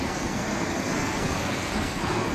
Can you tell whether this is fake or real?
fake